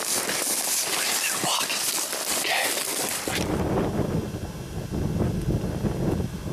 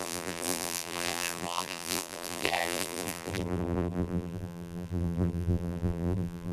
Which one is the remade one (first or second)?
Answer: second